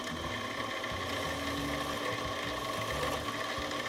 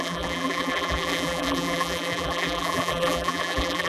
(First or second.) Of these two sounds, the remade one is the second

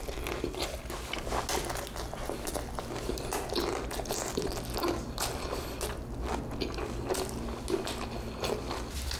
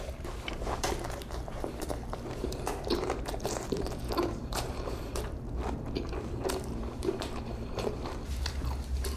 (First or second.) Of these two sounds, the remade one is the second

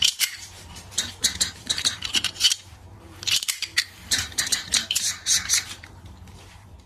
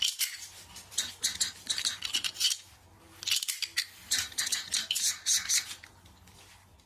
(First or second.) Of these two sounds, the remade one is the first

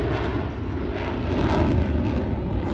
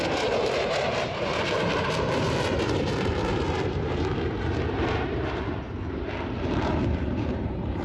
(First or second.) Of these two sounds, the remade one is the second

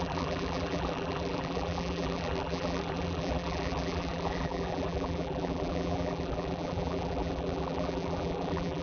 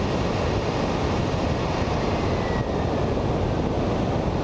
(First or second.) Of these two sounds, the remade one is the first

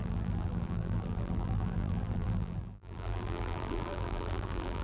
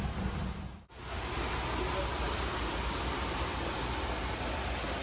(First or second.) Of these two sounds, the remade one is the first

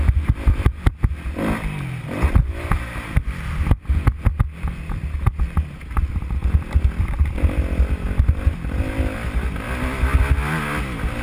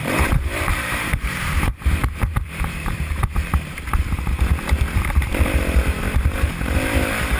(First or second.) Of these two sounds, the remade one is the second